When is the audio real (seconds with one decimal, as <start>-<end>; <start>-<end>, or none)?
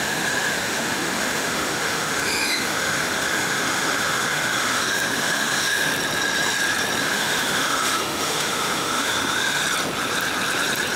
5.9-7.0; 9.6-11.0